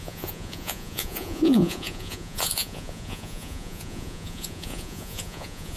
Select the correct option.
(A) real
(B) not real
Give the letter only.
B